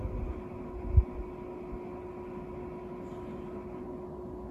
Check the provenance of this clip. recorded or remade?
recorded